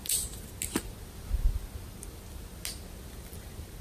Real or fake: real